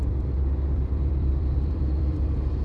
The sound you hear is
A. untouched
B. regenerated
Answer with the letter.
B